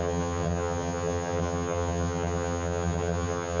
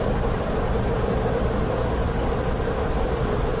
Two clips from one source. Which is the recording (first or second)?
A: second